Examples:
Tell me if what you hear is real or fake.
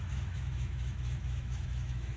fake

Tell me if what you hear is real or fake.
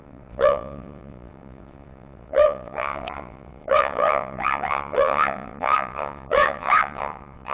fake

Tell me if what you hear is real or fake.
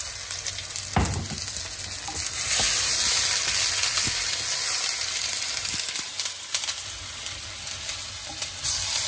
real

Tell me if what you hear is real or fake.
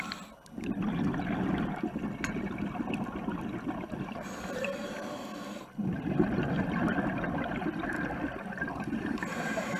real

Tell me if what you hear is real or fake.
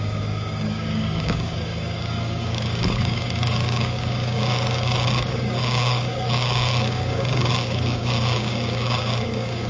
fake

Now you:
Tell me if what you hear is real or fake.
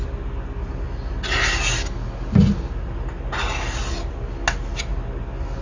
real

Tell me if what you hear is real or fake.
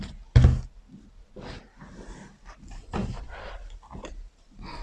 real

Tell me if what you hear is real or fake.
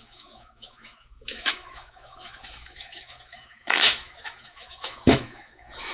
fake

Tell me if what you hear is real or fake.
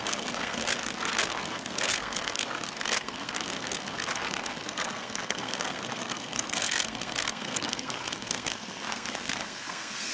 fake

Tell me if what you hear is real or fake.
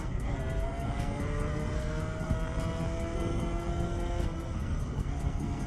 fake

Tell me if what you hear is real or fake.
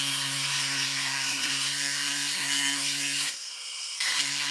fake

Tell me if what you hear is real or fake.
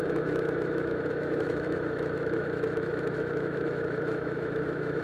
fake